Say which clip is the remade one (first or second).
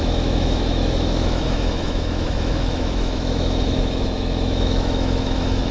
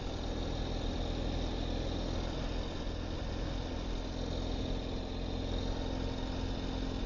first